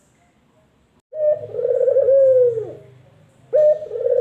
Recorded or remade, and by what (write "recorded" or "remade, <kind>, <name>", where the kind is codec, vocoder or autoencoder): recorded